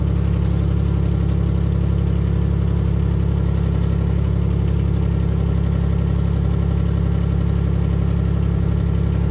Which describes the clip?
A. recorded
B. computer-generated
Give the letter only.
A